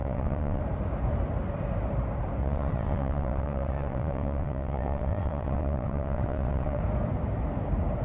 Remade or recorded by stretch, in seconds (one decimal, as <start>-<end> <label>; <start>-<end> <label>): 0.0-0.6 remade; 0.6-2.4 recorded; 2.4-6.8 remade; 6.8-8.0 recorded